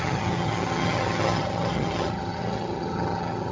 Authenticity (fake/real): fake